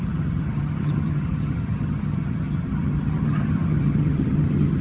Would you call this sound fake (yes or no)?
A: yes